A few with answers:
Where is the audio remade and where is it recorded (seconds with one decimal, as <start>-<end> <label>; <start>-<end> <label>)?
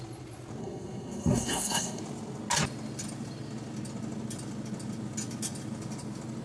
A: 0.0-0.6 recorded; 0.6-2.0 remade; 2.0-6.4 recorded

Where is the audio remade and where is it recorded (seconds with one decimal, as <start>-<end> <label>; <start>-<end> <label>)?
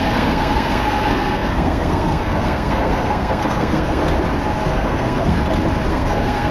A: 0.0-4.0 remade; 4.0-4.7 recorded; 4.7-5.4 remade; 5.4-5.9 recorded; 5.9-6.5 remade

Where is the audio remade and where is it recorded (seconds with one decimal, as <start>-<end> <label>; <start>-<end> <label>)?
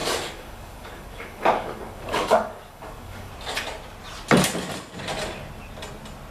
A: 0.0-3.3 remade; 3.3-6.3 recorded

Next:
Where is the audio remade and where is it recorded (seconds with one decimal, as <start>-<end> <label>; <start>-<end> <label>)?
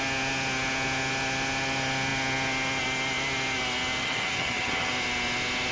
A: 0.0-4.0 recorded; 4.0-4.9 remade; 4.9-5.7 recorded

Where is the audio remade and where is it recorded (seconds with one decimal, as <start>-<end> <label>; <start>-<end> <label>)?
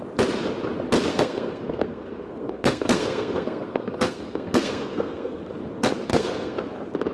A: 0.0-1.1 recorded; 1.1-5.4 remade; 5.4-6.1 recorded; 6.1-6.6 remade; 6.6-7.1 recorded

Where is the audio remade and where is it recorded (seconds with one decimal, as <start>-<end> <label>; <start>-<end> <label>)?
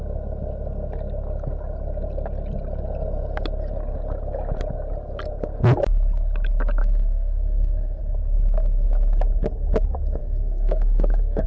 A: 0.0-6.8 recorded; 6.8-8.0 remade; 8.0-10.2 recorded; 10.2-11.5 remade